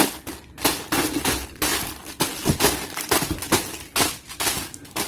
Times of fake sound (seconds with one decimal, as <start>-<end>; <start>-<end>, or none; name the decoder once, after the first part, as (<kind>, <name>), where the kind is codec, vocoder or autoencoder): none